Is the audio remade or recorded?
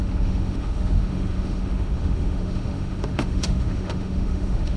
remade